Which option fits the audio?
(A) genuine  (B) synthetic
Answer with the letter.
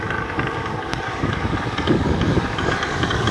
B